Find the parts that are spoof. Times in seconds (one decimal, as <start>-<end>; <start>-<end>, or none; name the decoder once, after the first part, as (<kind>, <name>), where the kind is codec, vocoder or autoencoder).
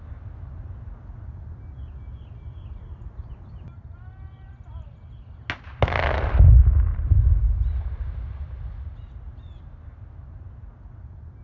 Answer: none